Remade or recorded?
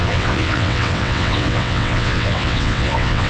remade